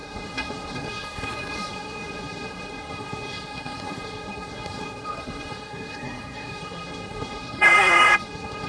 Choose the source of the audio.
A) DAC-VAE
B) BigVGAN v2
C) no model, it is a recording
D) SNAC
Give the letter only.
D